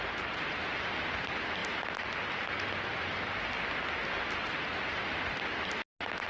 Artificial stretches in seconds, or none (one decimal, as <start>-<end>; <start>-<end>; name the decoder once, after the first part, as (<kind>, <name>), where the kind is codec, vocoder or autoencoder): none